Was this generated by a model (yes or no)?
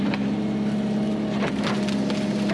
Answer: no